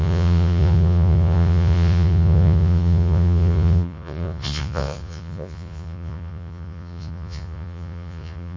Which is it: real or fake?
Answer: fake